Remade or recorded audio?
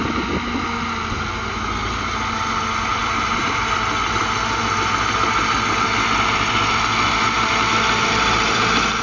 recorded